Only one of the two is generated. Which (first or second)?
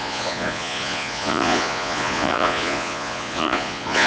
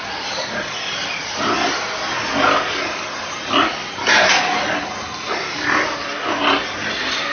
first